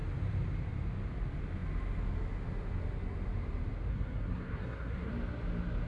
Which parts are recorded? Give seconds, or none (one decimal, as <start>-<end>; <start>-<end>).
0.0-3.9; 5.1-5.9